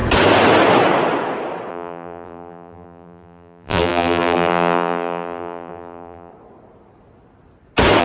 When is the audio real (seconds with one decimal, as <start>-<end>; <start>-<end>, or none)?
0.0-1.7; 6.3-8.0